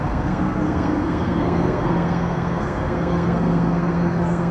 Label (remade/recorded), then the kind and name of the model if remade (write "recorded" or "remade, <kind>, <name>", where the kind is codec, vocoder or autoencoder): remade, codec, SNAC